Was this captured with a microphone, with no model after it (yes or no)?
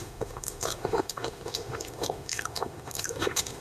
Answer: no